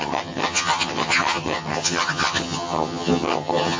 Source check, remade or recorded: remade